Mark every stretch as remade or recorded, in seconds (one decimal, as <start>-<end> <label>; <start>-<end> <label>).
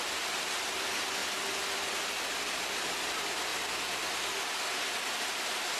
0.0-5.8 recorded